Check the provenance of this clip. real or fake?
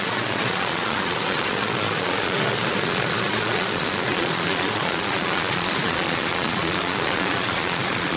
fake